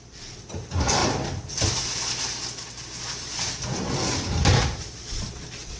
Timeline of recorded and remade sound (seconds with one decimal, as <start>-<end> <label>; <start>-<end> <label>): 0.0-5.8 recorded